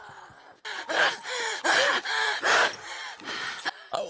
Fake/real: real